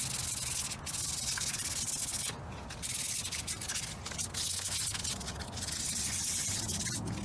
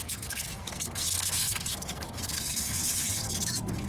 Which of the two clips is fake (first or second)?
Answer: second